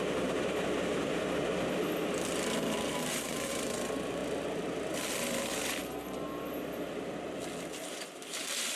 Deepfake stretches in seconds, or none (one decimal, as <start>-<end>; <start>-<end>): 0.0-1.1; 2.6-5.8; 7.9-8.8